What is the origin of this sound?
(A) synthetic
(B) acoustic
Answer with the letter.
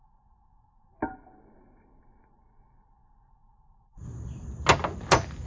B